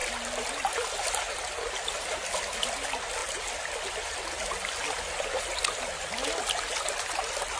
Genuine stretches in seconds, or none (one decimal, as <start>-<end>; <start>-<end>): 0.0-7.6